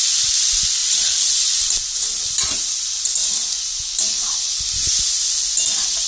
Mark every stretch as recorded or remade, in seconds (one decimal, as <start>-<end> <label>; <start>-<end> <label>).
0.0-6.1 recorded